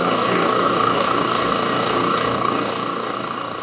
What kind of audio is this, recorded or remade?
remade